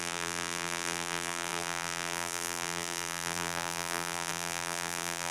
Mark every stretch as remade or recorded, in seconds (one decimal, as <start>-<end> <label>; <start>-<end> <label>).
0.0-5.3 remade